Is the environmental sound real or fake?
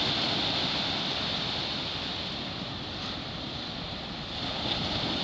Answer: real